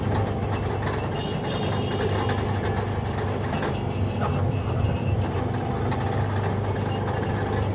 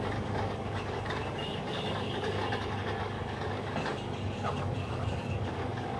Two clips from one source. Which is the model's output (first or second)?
second